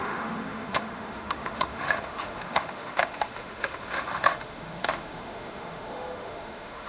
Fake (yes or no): yes